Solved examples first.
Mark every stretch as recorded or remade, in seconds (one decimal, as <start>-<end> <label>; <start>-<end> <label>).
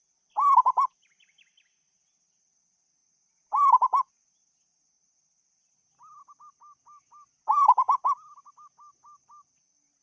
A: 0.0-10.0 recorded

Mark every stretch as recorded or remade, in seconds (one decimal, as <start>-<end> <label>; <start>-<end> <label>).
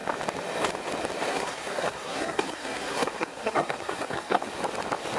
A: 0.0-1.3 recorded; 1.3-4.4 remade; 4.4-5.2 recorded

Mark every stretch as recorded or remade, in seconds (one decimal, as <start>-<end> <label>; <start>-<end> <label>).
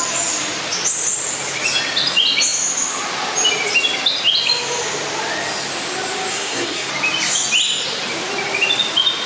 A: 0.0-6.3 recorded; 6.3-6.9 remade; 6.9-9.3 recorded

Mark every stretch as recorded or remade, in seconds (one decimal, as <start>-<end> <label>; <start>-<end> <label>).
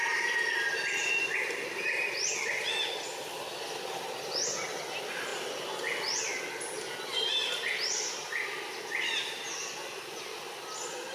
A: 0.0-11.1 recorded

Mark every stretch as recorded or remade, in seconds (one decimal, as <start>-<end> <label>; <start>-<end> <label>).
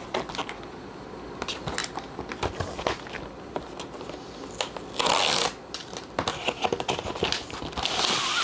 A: 0.0-8.4 recorded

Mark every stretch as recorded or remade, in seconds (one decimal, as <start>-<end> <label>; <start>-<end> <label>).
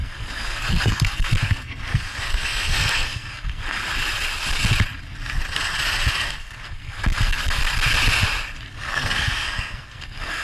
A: 0.0-3.8 remade; 3.8-6.1 recorded; 6.1-7.6 remade; 7.6-8.7 recorded; 8.7-10.4 remade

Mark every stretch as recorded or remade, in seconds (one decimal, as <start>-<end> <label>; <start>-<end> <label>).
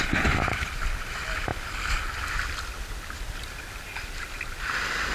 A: 0.0-5.1 recorded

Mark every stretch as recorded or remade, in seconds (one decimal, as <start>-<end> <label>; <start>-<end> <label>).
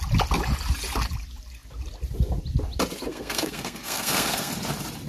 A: 0.0-3.1 recorded; 3.1-4.5 remade; 4.5-5.1 recorded